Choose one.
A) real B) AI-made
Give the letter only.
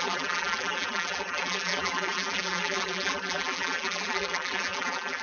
B